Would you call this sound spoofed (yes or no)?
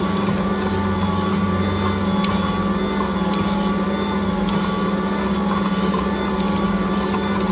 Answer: no